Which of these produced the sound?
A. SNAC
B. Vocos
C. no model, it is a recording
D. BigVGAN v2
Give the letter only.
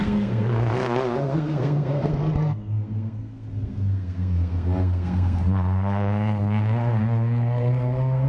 A